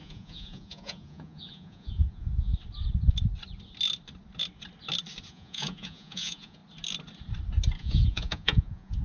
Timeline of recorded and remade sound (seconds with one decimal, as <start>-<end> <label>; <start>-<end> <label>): 0.0-2.5 remade; 2.5-5.3 recorded; 5.3-6.6 remade; 6.6-7.8 recorded; 7.8-9.0 remade